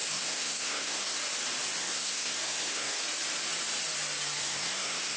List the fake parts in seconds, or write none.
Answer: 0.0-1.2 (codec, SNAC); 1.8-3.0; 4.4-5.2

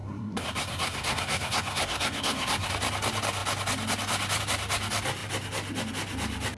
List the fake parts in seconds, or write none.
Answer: 0.0-2.7 (codec, SNAC)

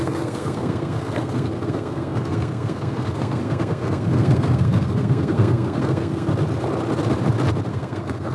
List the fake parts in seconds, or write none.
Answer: 0.0-6.3 (codec, SNAC); 7.7-8.3

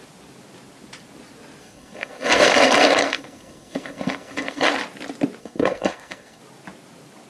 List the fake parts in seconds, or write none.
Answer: 1.6-4.7 (codec, SNAC); 5.4-6.4